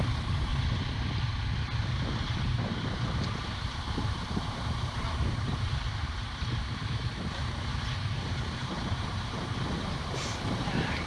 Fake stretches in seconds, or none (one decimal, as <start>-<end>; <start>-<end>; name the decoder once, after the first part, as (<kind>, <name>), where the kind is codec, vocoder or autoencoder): 0.0-0.5 (vocoder, BigVGAN v2); 2.2-11.1